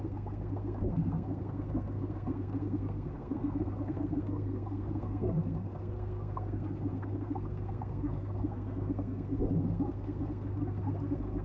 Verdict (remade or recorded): remade